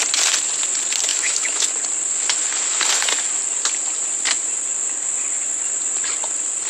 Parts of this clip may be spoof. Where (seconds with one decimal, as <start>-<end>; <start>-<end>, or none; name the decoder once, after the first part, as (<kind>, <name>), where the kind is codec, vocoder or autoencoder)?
1.1-1.7 (autoencoder, DAC-VAE)